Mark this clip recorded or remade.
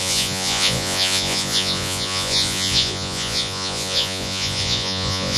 remade